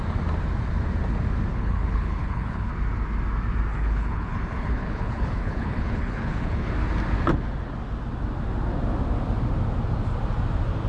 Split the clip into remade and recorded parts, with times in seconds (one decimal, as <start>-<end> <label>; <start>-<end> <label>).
0.0-1.5 recorded; 1.5-2.7 remade; 2.7-3.7 recorded; 3.7-6.7 remade; 6.7-10.9 recorded